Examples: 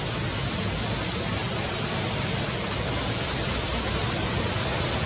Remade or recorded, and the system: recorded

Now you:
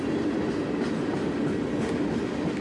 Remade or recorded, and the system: recorded